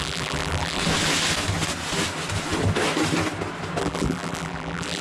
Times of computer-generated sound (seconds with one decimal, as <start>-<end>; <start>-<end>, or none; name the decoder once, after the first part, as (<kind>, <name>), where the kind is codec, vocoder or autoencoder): 0.0-0.8 (vocoder, BigVGAN v2); 3.8-5.0